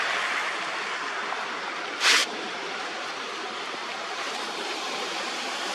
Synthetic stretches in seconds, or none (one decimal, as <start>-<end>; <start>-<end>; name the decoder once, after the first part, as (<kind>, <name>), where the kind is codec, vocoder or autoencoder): 2.2-5.7 (vocoder, BigVGAN v2)